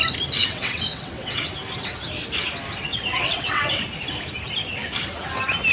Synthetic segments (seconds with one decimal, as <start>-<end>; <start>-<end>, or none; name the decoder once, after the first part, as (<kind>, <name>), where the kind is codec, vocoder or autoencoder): 0.4-1.4 (vocoder, WaveNeXt); 2.9-3.7